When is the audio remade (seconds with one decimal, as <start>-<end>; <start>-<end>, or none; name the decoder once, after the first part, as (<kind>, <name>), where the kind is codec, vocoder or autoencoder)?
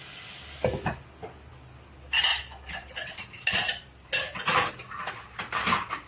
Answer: none